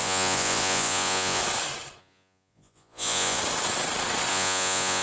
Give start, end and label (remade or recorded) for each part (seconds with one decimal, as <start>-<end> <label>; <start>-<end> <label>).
0.0-1.4 remade; 1.4-2.0 recorded; 2.0-3.4 remade; 3.4-4.3 recorded; 4.3-5.0 remade